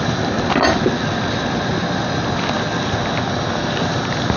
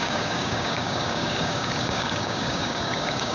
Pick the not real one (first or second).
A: second